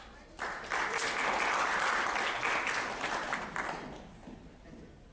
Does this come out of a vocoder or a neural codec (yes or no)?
yes